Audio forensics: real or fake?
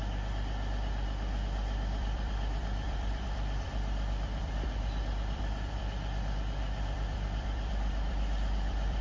fake